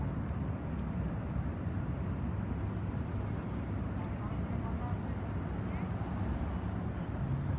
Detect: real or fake real